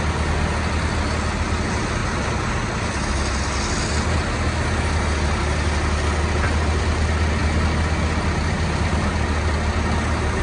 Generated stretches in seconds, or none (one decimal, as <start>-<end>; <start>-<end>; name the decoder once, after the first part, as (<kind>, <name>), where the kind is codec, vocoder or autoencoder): none